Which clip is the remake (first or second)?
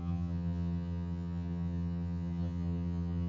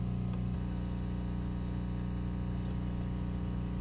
first